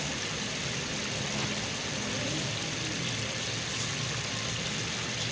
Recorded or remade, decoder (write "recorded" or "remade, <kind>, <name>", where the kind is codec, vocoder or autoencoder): recorded